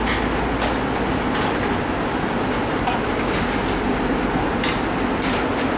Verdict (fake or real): real